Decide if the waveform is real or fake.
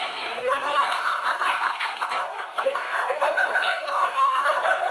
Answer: fake